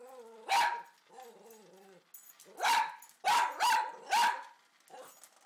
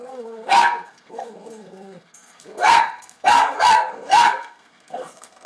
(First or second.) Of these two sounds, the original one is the first